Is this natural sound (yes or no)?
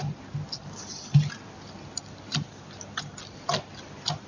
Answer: yes